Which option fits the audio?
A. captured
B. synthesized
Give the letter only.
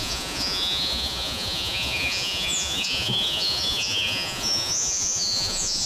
B